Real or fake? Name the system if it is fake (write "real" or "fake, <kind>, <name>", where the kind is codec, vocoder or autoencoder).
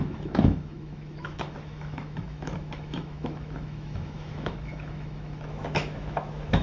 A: fake, autoencoder, DAC-VAE